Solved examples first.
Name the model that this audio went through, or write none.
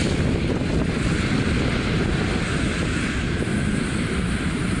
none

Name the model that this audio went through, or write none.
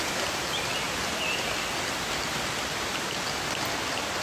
none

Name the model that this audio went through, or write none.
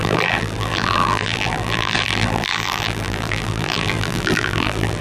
vocoder, BigVGAN v2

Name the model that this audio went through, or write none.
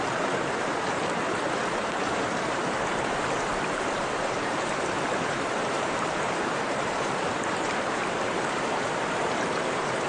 vocoder, BigVGAN v2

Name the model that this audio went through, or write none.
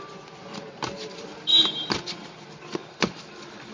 vocoder, BigVGAN v2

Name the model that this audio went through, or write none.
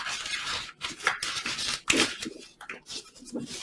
none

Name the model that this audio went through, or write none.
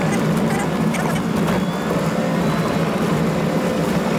none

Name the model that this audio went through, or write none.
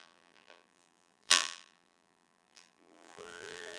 vocoder, BigVGAN v2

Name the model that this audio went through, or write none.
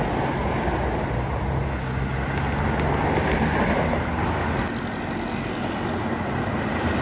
none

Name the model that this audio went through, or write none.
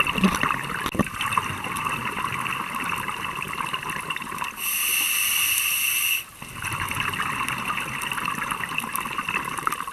none